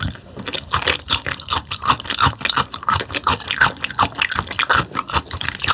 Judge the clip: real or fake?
real